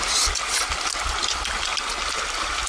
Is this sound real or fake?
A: real